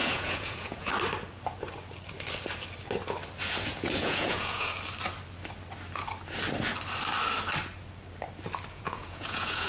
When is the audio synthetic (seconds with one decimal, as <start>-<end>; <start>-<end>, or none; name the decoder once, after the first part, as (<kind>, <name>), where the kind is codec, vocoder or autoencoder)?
0.0-0.9 (vocoder, Vocos); 3.6-4.7; 8.7-9.7